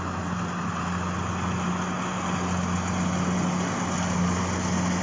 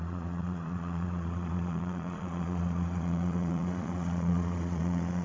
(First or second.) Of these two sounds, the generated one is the second